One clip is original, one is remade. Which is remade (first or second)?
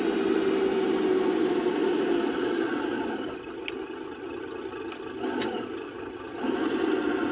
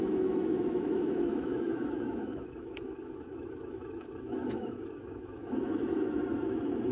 second